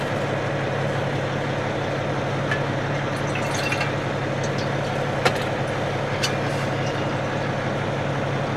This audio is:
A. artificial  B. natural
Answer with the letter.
B